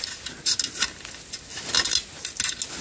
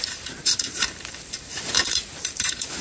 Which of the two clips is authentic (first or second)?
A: first